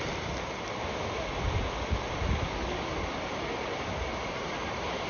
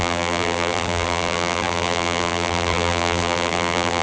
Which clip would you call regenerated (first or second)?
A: second